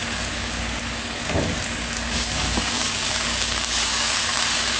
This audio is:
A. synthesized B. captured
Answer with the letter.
A